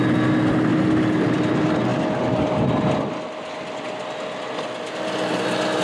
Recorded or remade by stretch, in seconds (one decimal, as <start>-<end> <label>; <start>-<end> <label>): 0.0-5.8 recorded